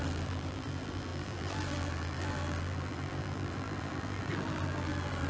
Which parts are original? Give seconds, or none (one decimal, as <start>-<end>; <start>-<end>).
none